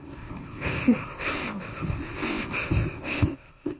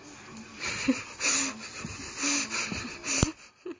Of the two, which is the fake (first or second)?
first